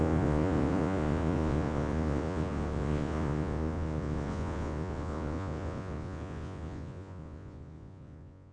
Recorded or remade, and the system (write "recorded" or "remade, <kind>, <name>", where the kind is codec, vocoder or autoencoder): remade, vocoder, Vocos